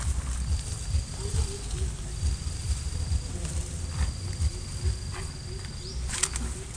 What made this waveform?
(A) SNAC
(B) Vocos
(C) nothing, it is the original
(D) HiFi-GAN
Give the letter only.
C